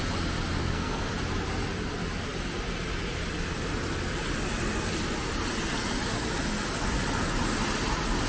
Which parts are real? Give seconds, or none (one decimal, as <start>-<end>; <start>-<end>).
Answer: 0.0-0.6; 1.1-8.3